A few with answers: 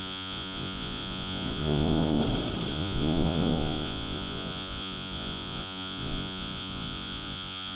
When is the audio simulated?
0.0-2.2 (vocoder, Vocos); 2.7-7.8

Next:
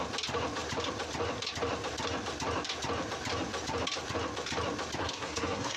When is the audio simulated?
5.0-5.8 (codec, SNAC)

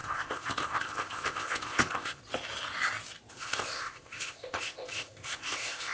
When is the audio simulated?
0.0-2.2 (codec, ZipCodec); 3.3-5.9

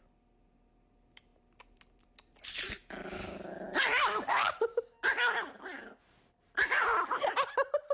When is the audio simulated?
none